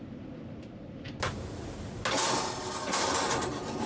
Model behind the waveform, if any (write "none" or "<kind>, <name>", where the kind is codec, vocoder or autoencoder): none